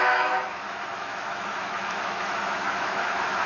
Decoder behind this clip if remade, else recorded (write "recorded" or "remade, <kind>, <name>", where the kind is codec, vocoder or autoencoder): remade, autoencoder, DAC-VAE